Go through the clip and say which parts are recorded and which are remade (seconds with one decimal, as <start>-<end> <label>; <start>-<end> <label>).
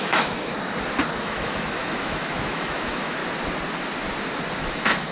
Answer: 0.0-0.5 remade; 0.5-1.2 recorded; 1.2-3.2 remade; 3.2-4.6 recorded; 4.6-5.1 remade